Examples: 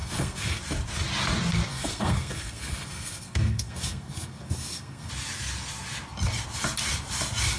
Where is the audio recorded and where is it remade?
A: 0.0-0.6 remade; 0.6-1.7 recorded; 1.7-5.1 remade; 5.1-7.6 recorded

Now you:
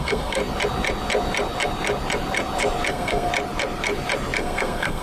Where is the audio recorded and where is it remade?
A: 0.0-0.4 remade; 0.4-2.9 recorded; 2.9-3.3 remade; 3.3-4.4 recorded; 4.4-5.0 remade

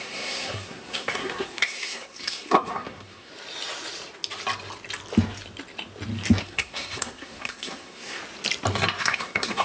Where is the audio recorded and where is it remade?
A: 0.0-3.3 remade; 3.3-6.4 recorded; 6.4-8.2 remade; 8.2-9.0 recorded; 9.0-9.6 remade

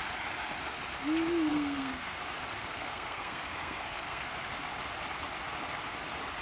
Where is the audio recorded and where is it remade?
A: 0.0-1.5 recorded; 1.5-2.2 remade; 2.2-2.6 recorded; 2.6-4.4 remade; 4.4-6.4 recorded

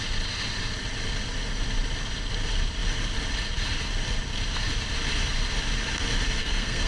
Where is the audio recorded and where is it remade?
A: 0.0-6.4 recorded; 6.4-6.9 remade